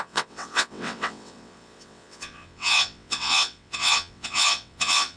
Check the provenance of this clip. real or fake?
fake